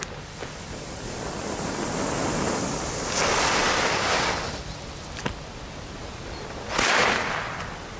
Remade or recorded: recorded